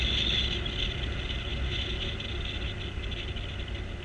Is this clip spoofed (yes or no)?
no